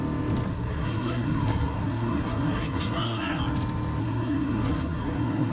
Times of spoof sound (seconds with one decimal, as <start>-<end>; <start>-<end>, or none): 0.5-3.4; 4.0-5.5